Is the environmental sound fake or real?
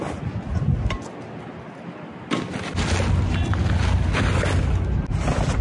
real